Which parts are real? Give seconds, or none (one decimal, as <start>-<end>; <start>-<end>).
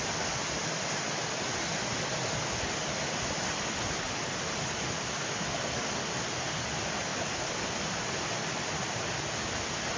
0.0-10.0